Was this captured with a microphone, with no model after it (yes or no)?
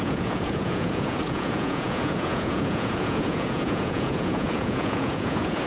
no